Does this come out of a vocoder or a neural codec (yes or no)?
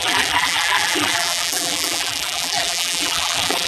yes